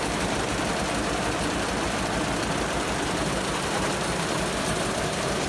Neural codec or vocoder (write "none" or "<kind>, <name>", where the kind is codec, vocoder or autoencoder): vocoder, BigVGAN v2